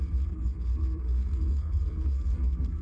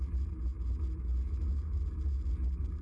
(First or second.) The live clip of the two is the second